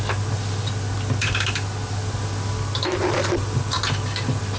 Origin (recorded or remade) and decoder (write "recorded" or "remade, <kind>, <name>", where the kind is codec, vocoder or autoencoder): recorded